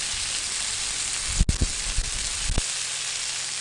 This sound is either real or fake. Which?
real